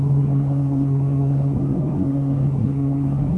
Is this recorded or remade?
remade